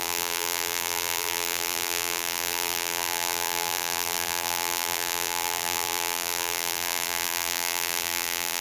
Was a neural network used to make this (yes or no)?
yes